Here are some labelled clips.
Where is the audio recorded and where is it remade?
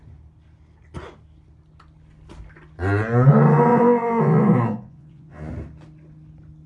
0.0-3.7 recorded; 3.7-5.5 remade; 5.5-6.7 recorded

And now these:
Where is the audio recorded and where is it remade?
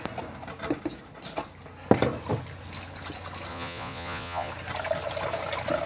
0.0-3.5 recorded; 3.5-4.5 remade; 4.5-5.9 recorded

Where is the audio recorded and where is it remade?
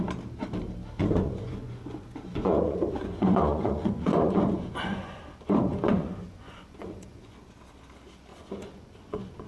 0.0-1.0 recorded; 1.0-5.2 remade; 5.2-5.7 recorded; 5.7-7.4 remade; 7.4-8.3 recorded; 8.3-9.5 remade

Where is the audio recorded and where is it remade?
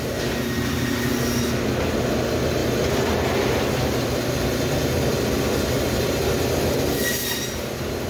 0.0-8.1 recorded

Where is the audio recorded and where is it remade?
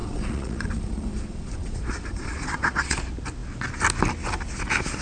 0.0-3.0 remade; 3.0-5.0 recorded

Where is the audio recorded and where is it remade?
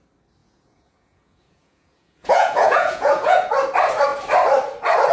0.0-0.4 recorded; 0.4-3.5 remade; 3.5-5.1 recorded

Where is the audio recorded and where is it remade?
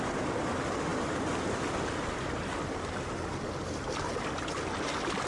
0.0-5.3 recorded